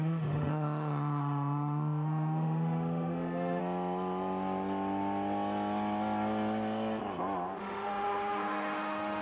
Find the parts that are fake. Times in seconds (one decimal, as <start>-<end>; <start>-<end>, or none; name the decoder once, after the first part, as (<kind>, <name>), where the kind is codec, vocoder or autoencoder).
0.0-3.6 (autoencoder, DAC-VAE); 7.6-9.2